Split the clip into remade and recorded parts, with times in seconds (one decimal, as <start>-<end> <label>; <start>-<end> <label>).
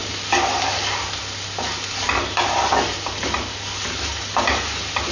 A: 0.0-5.1 recorded